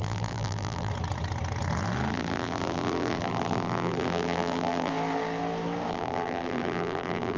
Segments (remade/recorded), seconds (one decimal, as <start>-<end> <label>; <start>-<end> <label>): 0.0-0.9 remade; 0.9-2.1 recorded; 2.1-4.9 remade; 4.9-5.9 recorded; 5.9-7.4 remade

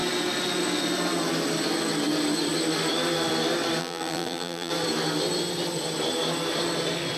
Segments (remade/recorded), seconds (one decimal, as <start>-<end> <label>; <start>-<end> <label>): 0.0-3.8 recorded; 3.8-4.7 remade; 4.7-7.2 recorded

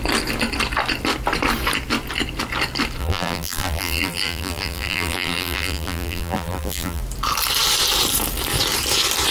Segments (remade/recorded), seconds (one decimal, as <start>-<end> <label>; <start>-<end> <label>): 0.0-3.0 recorded; 3.0-7.0 remade; 7.0-9.3 recorded

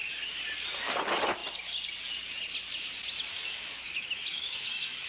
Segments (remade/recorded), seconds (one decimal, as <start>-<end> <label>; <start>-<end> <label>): 0.0-3.3 recorded; 3.3-5.1 remade